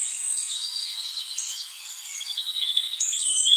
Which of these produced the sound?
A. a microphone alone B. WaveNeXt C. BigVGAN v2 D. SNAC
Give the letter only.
D